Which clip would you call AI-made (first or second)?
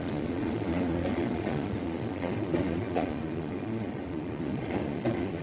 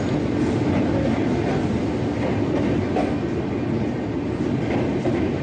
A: first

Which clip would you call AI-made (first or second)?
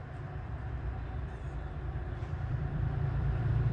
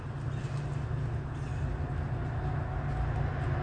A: first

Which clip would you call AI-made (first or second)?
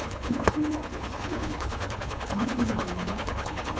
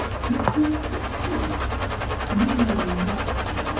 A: first